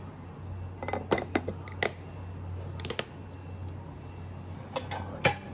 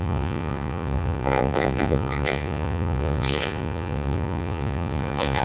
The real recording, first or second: first